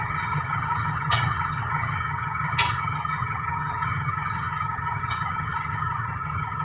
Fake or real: fake